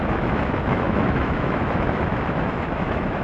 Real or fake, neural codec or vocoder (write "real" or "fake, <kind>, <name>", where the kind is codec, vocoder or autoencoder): fake, autoencoder, DAC-VAE